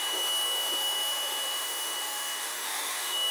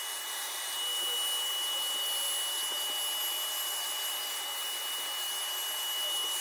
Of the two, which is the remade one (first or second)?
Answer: first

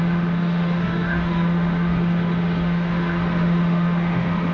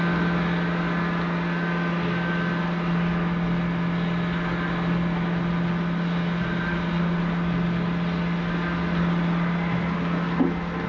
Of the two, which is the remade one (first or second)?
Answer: first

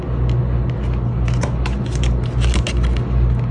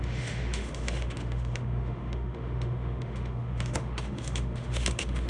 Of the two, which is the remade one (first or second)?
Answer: second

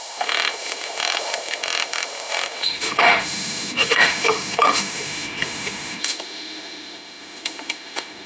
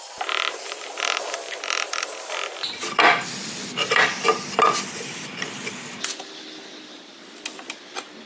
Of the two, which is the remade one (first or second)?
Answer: first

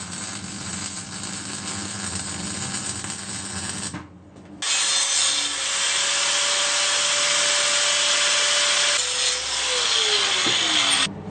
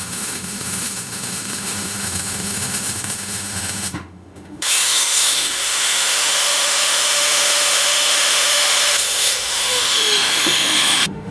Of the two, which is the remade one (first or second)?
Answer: second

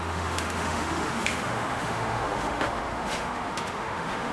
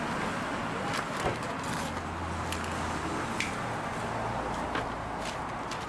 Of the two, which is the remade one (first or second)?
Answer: first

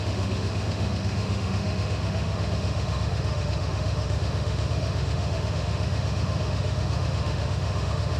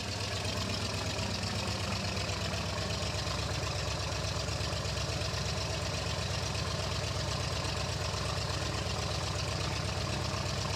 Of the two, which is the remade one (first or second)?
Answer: first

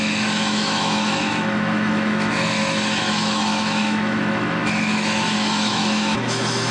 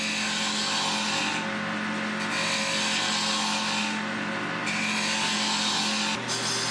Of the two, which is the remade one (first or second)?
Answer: first